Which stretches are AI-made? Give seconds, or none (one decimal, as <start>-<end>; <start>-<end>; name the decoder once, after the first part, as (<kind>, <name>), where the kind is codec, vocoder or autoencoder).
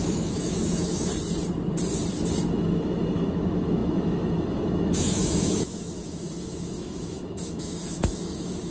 0.0-1.1 (autoencoder, DAC-VAE); 2.5-8.7